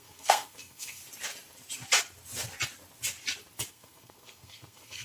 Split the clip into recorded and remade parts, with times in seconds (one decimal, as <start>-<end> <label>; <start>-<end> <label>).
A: 0.0-1.0 remade; 1.0-3.7 recorded; 3.7-5.0 remade